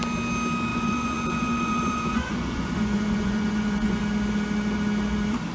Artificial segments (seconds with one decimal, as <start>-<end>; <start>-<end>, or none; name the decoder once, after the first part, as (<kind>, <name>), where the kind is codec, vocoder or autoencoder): 0.7-4.0 (vocoder, Vocos)